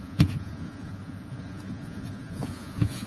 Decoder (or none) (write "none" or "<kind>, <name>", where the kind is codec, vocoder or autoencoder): vocoder, Vocos